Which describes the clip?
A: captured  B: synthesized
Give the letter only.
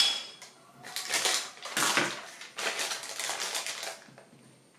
A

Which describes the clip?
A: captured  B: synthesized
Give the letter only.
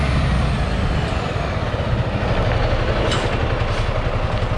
A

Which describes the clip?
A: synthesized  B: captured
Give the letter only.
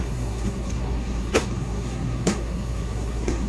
A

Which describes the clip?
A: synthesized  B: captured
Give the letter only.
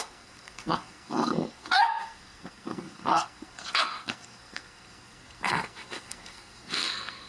A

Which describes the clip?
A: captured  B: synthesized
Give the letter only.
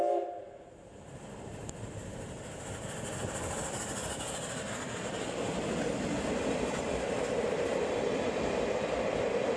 A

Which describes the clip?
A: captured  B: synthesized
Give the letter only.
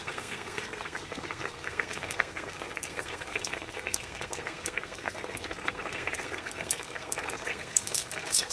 B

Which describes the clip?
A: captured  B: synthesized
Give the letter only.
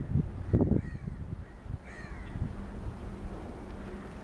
A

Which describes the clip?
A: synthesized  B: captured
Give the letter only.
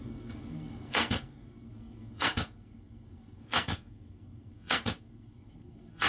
A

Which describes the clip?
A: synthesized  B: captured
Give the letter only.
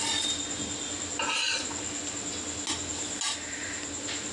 B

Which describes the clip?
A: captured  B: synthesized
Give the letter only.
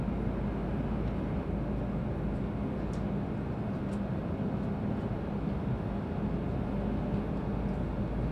A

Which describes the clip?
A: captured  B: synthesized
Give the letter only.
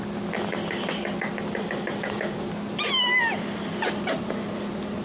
A